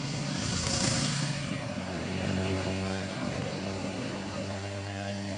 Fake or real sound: fake